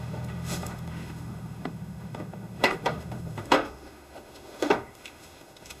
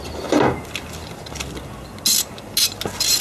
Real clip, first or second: second